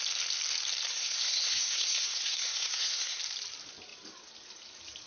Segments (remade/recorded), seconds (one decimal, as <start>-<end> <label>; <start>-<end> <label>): 0.0-0.9 recorded; 0.9-3.2 remade; 3.2-5.1 recorded